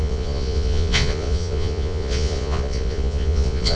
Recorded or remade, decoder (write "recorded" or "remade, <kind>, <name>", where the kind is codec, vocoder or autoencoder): remade, vocoder, Vocos